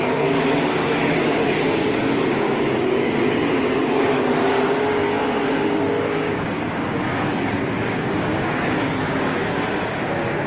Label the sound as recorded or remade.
remade